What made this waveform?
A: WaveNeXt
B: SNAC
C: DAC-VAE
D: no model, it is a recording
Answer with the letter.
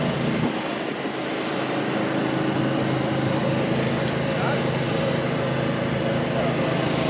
D